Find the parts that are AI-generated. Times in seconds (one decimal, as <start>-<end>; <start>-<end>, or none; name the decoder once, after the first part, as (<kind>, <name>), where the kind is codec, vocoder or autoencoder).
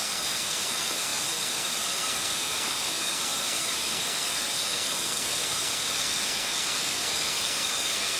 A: 0.0-8.2 (codec, SNAC)